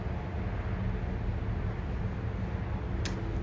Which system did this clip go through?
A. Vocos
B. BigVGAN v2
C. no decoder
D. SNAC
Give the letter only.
C